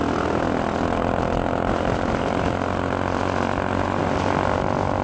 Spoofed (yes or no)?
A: no